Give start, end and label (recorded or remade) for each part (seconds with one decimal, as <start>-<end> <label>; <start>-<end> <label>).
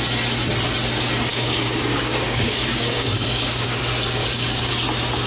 0.0-1.3 recorded; 1.3-3.8 remade; 3.8-4.2 recorded; 4.2-4.7 remade; 4.7-5.3 recorded